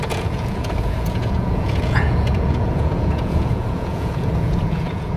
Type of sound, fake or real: fake